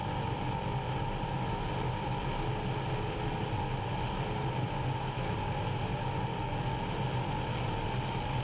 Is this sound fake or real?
real